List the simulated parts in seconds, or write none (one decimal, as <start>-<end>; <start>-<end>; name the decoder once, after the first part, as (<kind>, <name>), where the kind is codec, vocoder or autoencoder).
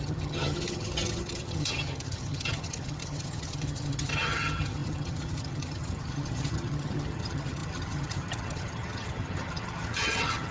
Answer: 0.0-10.5 (vocoder, HiFi-GAN)